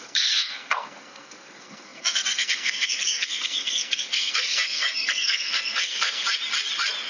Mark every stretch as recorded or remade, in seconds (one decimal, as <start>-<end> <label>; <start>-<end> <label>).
0.0-6.2 remade; 6.2-7.1 recorded